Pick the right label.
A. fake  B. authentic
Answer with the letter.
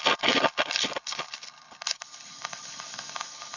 A